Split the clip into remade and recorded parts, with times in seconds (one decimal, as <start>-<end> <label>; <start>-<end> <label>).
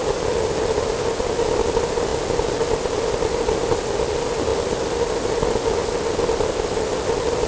0.0-7.5 recorded